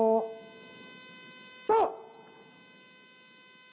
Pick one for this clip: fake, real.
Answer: real